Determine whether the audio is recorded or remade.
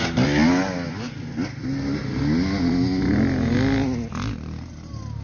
recorded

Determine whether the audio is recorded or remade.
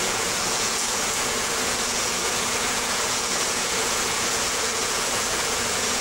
remade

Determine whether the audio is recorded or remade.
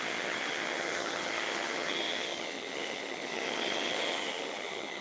remade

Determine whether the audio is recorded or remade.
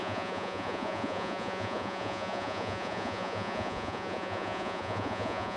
remade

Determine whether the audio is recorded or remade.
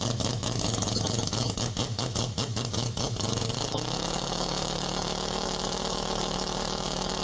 remade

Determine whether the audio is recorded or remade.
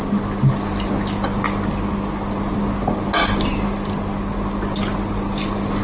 recorded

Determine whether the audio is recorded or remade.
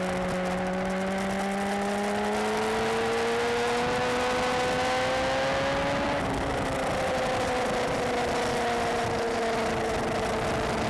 recorded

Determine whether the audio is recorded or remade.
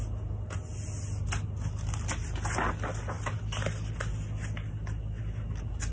recorded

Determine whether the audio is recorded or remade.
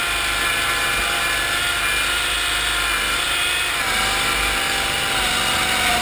recorded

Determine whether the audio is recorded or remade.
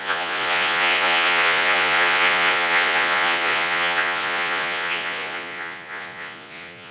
remade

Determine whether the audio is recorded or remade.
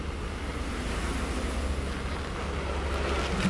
recorded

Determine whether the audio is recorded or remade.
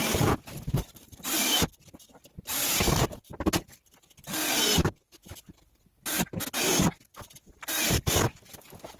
recorded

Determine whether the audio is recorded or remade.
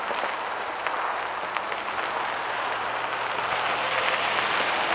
recorded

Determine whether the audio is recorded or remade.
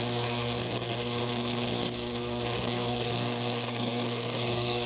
remade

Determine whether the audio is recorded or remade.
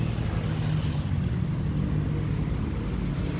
recorded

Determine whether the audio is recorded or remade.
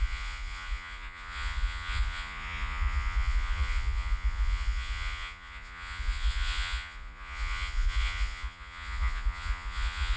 remade